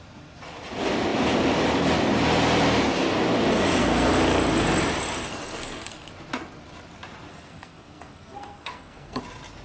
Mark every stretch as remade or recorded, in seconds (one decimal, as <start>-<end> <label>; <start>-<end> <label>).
0.0-3.5 recorded; 3.5-4.1 remade; 4.1-5.3 recorded; 5.3-6.1 remade; 6.1-7.3 recorded; 7.3-9.2 remade; 9.2-9.6 recorded